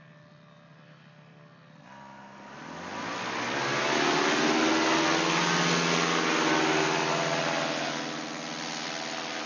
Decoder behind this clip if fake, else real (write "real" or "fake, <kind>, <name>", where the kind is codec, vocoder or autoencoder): real